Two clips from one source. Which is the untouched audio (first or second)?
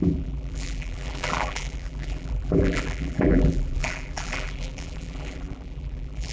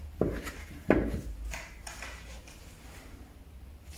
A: second